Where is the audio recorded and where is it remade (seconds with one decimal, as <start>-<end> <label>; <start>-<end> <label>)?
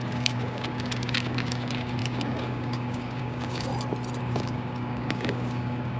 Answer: 0.0-3.7 remade; 3.7-4.2 recorded; 4.2-6.0 remade